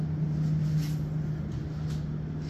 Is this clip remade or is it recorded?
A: recorded